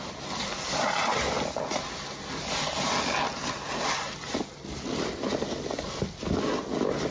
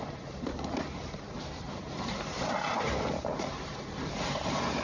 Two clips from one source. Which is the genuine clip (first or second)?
first